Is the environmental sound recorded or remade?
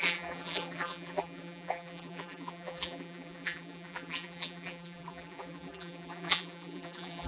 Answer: remade